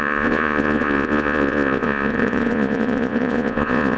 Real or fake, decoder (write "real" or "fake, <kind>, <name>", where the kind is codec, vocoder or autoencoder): fake, vocoder, Vocos